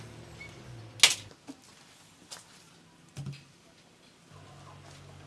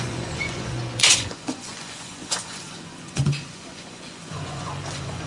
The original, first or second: first